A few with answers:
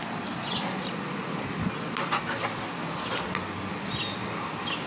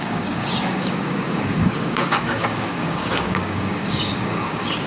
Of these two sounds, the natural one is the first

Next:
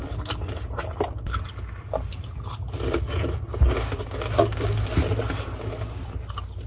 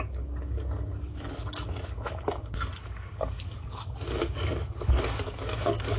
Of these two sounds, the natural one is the first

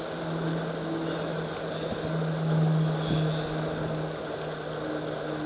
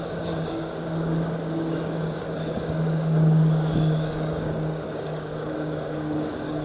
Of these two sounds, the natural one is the first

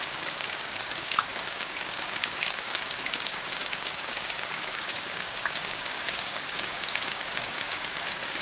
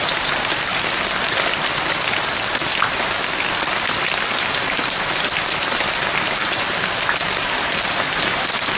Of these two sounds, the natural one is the second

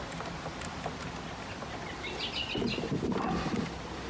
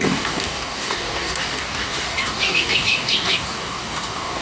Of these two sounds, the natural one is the first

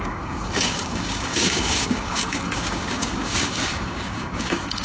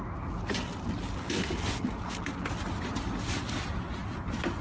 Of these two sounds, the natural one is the second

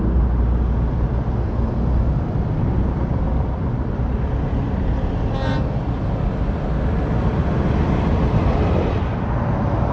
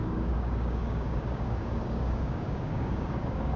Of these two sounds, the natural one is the first